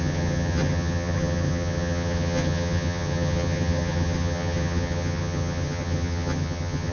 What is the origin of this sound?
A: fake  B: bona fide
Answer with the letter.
A